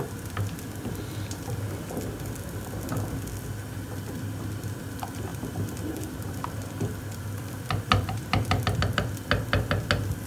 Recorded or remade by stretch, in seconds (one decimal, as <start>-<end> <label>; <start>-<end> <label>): 0.0-5.3 recorded; 5.3-7.5 remade; 7.5-10.3 recorded